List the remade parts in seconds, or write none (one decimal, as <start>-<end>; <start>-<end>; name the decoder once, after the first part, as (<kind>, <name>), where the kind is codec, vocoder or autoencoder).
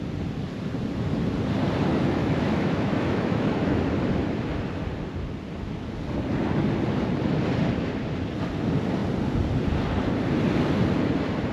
1.9-3.8 (autoencoder, DAC-VAE)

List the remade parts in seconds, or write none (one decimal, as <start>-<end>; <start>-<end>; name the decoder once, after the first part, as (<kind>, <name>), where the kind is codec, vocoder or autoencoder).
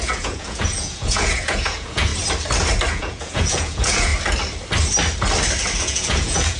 0.0-2.1 (vocoder, Vocos); 2.9-4.1; 5.8-6.6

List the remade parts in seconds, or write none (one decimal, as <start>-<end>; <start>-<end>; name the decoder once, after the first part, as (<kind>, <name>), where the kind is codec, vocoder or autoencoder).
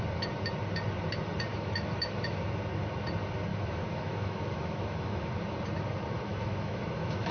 1.5-2.4 (autoencoder, DAC-VAE); 3.5-5.3; 6.3-7.3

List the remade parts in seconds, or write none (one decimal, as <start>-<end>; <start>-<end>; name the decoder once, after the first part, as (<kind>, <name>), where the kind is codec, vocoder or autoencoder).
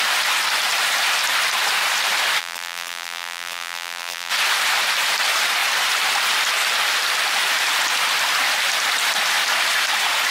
2.4-4.3 (vocoder, BigVGAN v2)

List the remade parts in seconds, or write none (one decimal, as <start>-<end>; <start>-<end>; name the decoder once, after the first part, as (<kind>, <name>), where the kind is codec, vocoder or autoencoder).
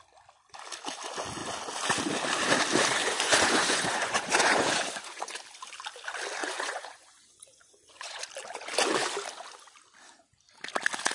3.0-5.3 (vocoder, Vocos); 6.4-8.2